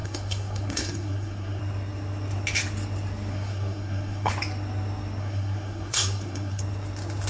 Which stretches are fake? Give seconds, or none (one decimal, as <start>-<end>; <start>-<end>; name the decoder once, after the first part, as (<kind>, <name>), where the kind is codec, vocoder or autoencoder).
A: 0.0-1.6 (codec, SNAC); 3.3-4.3; 5.2-6.6